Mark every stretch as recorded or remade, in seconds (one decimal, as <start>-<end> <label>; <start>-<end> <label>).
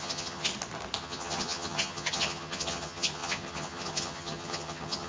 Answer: 0.0-0.5 remade; 0.5-1.0 recorded; 1.0-5.1 remade